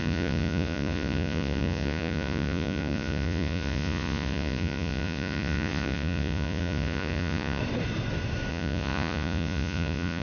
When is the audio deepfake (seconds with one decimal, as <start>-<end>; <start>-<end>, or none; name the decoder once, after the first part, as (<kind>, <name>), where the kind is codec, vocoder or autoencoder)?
0.0-7.6 (vocoder, Vocos); 8.5-10.2